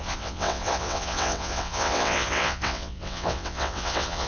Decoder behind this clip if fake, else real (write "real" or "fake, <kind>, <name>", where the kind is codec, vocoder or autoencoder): fake, vocoder, WaveNeXt